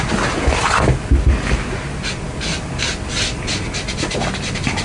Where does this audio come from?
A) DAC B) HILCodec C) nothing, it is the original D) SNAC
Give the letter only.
C